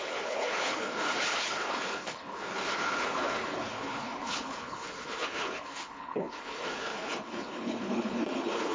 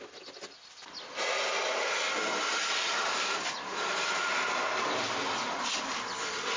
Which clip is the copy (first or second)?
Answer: first